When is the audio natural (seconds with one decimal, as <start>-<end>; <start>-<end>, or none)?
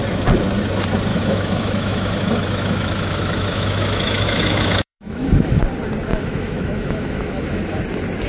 0.0-1.1; 5.6-6.1; 7.8-8.3